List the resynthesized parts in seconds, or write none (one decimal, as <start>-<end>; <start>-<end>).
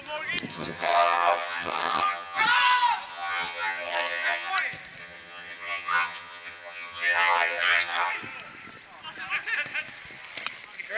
0.5-2.4; 3.1-4.5; 5.0-8.1